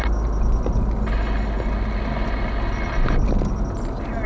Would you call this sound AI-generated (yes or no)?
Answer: no